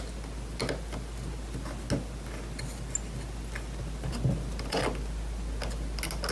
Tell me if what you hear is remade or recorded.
recorded